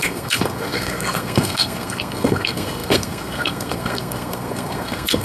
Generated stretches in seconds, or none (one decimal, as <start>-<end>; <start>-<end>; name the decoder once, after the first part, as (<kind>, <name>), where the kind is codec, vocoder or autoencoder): 0.0-5.2 (codec, SNAC)